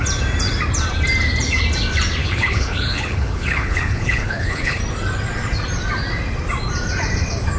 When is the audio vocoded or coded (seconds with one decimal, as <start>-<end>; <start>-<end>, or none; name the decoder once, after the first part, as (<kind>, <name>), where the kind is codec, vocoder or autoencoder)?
2.2-4.8 (codec, HILCodec)